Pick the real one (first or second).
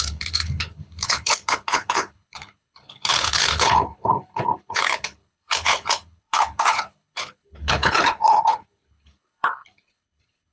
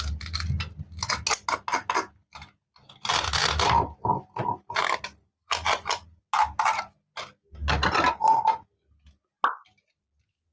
second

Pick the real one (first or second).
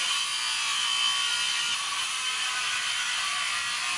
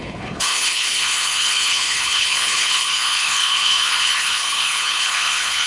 first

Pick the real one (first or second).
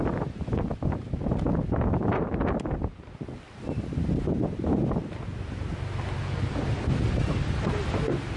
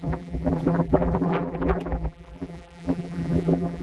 first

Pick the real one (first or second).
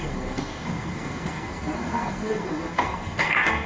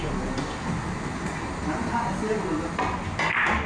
second